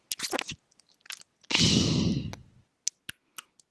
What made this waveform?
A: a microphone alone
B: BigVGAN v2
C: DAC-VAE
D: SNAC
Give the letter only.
A